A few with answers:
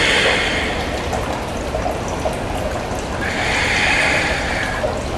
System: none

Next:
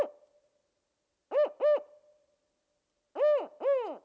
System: none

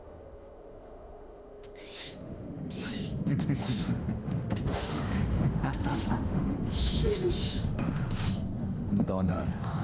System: autoencoder, DAC-VAE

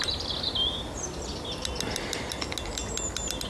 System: none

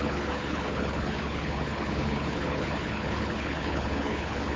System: codec, HILCodec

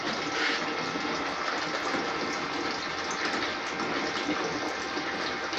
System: none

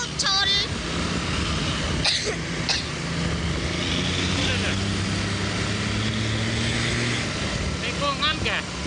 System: none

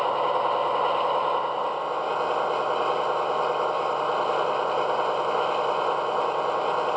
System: none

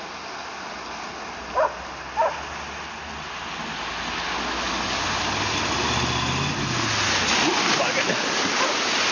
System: none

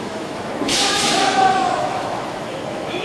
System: autoencoder, DAC-VAE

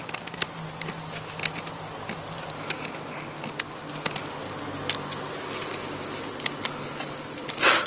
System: none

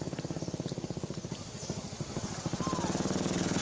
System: none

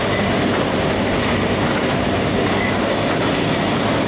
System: none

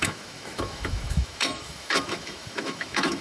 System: autoencoder, DAC-VAE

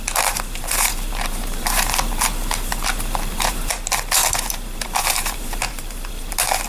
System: vocoder, BigVGAN v2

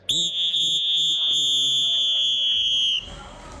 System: none